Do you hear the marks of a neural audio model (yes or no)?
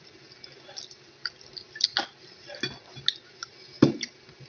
no